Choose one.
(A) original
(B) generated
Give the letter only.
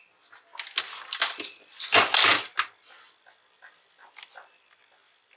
A